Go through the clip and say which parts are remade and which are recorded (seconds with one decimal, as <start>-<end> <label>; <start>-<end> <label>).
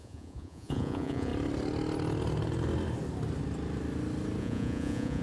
0.0-1.3 remade; 1.3-4.4 recorded; 4.4-5.2 remade